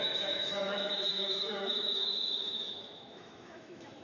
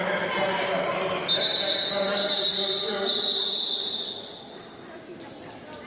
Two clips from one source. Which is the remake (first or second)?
first